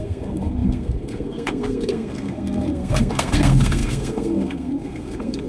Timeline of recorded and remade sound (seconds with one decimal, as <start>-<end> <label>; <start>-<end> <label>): 0.0-5.5 remade